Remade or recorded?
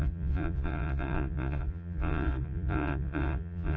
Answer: remade